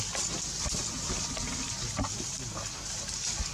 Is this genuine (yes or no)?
yes